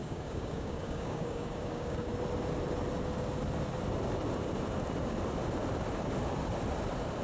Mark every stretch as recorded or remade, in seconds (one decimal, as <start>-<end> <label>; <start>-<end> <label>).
0.0-2.1 remade; 2.1-7.2 recorded